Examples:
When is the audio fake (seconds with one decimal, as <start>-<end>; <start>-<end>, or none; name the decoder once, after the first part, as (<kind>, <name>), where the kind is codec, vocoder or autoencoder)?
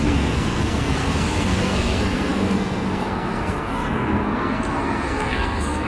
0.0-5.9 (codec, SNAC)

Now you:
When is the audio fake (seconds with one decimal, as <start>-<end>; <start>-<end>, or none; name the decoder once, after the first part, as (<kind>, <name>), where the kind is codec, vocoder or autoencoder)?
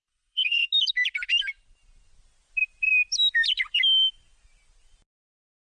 0.0-0.7 (codec, HILCodec)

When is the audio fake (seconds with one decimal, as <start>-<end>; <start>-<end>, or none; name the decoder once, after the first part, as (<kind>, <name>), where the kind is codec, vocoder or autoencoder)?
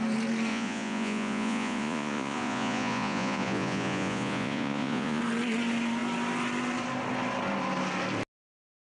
0.5-5.2 (vocoder, Vocos)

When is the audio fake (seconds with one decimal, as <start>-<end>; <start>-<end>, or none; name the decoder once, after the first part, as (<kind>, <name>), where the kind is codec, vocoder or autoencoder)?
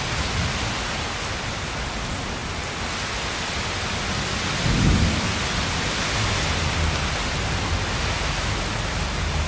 none